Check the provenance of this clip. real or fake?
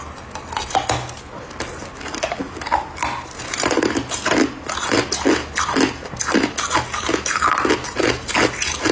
real